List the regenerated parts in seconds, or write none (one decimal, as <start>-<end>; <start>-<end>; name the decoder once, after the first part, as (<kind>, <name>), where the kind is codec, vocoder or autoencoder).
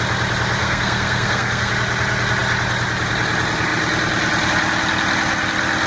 0.6-1.7 (codec, SNAC)